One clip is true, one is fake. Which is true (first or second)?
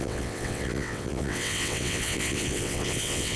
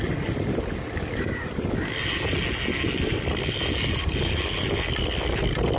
second